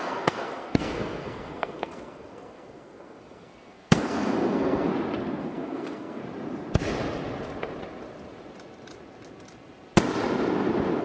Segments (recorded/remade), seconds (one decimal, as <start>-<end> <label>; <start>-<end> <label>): 0.0-4.9 remade; 4.9-5.4 recorded; 5.4-6.2 remade; 6.2-11.0 recorded